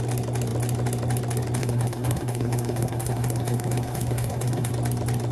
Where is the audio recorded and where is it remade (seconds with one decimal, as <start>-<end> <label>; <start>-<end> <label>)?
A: 0.0-1.6 recorded; 1.6-4.7 remade; 4.7-5.3 recorded